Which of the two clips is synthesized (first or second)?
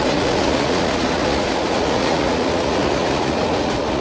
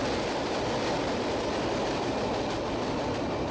first